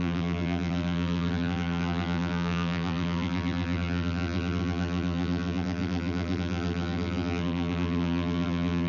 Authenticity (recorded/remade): remade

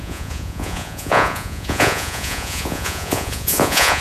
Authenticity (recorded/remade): remade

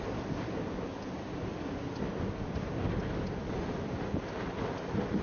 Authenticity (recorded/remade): recorded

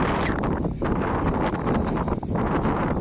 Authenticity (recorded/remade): recorded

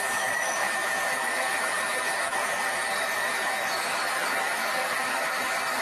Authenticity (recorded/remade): remade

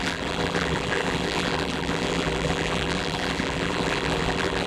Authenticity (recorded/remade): remade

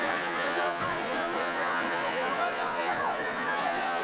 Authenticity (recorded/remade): remade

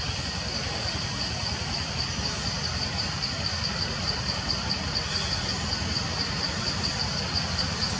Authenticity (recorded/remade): recorded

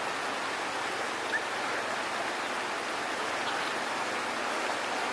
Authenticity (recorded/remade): recorded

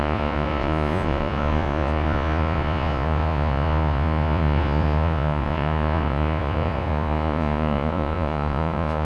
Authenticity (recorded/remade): remade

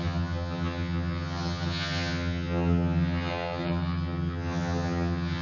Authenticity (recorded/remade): remade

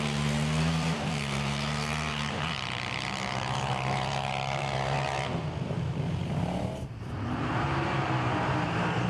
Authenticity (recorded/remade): remade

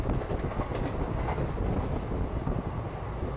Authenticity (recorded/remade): recorded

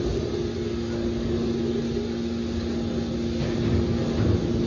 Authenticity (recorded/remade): recorded